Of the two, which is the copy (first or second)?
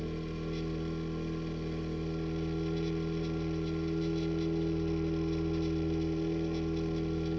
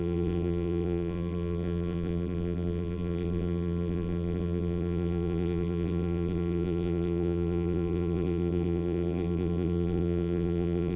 second